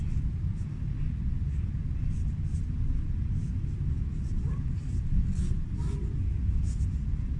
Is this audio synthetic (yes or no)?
no